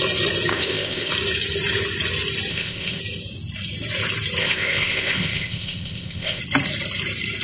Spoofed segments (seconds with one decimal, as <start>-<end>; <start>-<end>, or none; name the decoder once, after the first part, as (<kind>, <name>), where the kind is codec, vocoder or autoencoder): 0.5-1.1 (codec, ZipCodec); 2.5-3.0; 4.4-6.4